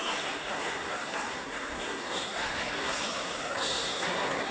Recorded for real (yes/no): no